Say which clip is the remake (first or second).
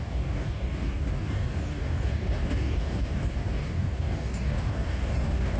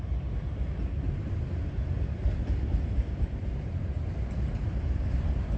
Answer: first